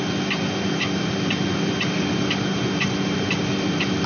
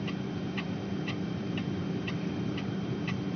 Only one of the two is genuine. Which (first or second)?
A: first